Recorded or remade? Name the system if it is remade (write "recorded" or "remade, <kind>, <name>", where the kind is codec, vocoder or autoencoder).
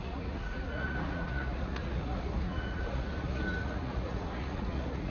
remade, vocoder, Vocos